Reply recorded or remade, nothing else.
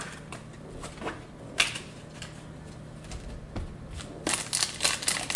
recorded